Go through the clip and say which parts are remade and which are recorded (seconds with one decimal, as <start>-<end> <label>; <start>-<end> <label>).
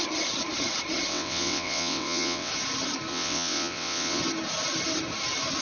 0.0-1.1 recorded; 1.1-2.5 remade; 2.5-3.1 recorded; 3.1-4.2 remade; 4.2-5.6 recorded